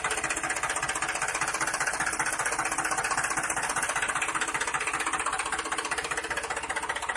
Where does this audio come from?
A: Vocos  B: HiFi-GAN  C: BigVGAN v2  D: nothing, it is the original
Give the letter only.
D